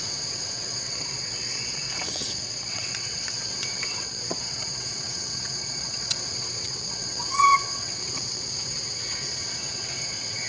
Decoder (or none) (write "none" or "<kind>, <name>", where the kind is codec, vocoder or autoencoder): vocoder, WaveNeXt